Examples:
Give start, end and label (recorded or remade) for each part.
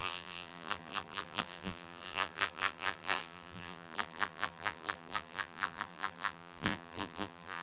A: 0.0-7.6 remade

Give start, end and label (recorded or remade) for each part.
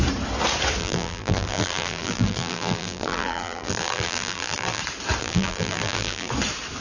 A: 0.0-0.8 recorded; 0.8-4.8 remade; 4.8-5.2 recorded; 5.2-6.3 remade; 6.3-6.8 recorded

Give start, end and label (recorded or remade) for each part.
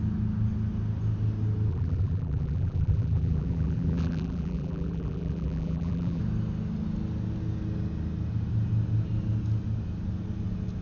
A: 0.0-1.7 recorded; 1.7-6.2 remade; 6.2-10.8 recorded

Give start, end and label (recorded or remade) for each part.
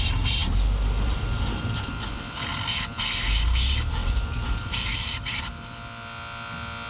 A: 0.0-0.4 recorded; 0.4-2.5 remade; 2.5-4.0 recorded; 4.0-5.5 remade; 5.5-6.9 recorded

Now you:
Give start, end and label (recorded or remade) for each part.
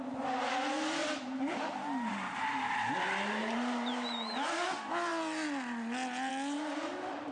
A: 0.0-1.0 recorded; 1.0-2.1 remade; 2.1-3.4 recorded; 3.4-4.5 remade; 4.5-7.3 recorded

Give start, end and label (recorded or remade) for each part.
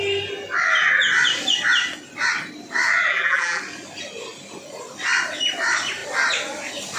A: 0.0-3.1 recorded; 3.1-3.6 remade; 3.6-7.0 recorded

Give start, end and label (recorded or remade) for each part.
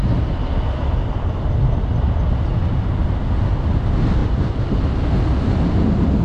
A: 0.0-4.2 recorded; 4.2-4.8 remade; 4.8-6.2 recorded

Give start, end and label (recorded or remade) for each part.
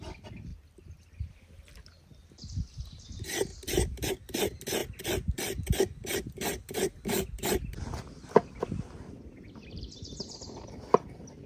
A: 0.0-11.5 recorded